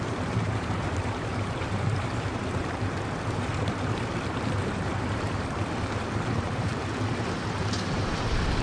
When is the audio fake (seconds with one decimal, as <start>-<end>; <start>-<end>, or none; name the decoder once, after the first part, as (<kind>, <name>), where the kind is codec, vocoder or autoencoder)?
0.0-6.7 (vocoder, BigVGAN v2); 7.2-8.6